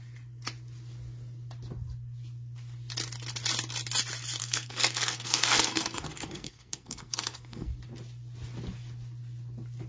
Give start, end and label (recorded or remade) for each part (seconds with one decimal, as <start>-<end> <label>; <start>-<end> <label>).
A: 0.0-4.4 recorded; 4.4-7.7 remade; 7.7-9.9 recorded